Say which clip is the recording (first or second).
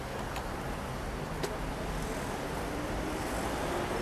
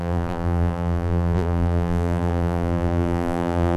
first